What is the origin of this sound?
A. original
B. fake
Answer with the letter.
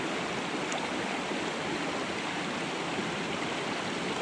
A